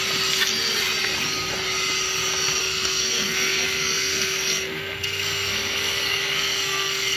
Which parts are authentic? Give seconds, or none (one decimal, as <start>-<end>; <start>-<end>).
0.0-2.6